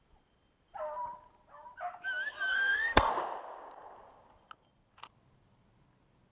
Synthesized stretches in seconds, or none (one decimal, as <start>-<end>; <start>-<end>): 2.5-3.1